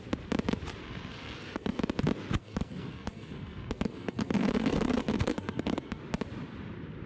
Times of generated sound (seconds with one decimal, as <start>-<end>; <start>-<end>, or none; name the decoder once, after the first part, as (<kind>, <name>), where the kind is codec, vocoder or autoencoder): 0.8-1.8 (codec, SNAC); 2.4-6.0